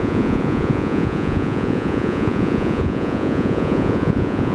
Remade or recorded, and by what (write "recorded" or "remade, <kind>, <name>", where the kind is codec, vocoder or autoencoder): remade, vocoder, Vocos